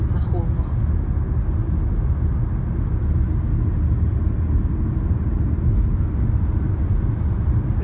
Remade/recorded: recorded